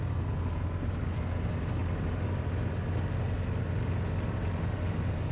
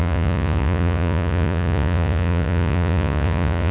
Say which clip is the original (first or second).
first